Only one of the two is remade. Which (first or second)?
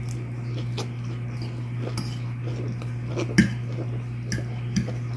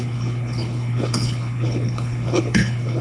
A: second